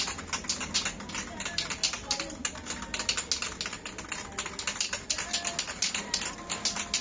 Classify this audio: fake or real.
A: real